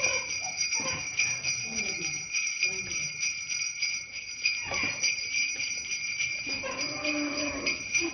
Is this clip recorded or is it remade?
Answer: remade